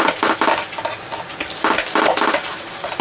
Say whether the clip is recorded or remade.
recorded